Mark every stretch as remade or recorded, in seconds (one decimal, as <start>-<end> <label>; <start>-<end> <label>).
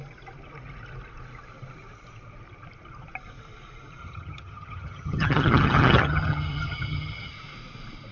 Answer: 0.0-4.0 recorded; 4.0-7.3 remade; 7.3-8.1 recorded